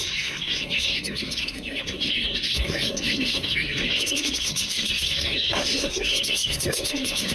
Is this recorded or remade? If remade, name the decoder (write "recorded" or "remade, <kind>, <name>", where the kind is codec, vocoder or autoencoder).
remade, codec, SNAC